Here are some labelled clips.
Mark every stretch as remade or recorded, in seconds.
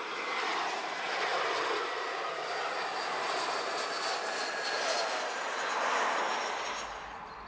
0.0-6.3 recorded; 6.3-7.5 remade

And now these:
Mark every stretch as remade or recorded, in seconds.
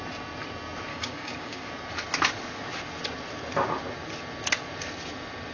0.0-0.9 recorded; 0.9-1.7 remade; 1.7-5.5 recorded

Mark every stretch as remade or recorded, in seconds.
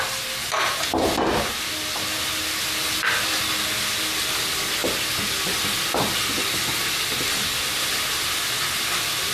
0.0-9.3 recorded